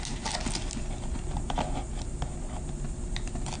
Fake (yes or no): no